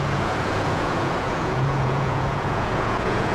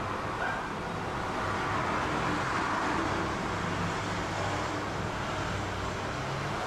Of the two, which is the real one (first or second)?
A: second